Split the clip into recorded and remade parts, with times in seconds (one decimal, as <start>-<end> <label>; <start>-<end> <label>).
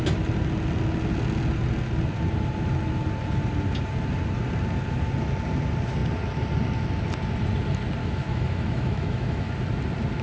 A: 0.0-8.0 recorded; 8.0-9.5 remade; 9.5-10.2 recorded